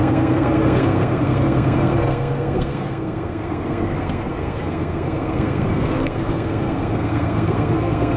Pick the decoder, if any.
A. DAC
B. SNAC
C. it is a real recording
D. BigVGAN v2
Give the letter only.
B